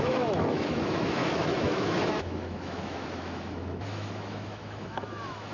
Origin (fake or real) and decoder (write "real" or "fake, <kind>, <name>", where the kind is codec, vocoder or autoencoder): fake, autoencoder, DAC-VAE